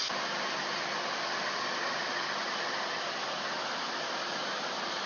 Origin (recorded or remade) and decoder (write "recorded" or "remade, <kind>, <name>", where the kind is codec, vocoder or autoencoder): recorded